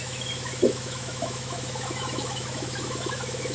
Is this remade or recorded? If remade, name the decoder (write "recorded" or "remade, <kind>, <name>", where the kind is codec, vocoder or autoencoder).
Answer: remade, autoencoder, DAC-VAE